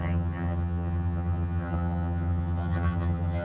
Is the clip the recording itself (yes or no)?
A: no